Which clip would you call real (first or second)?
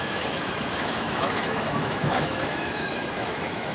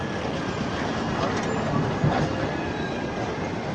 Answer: second